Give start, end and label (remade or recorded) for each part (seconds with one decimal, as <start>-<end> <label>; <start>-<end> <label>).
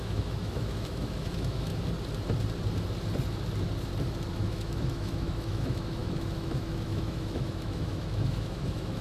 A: 0.0-1.7 remade; 1.7-4.3 recorded; 4.3-9.0 remade